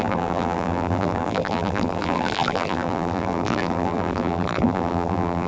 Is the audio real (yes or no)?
no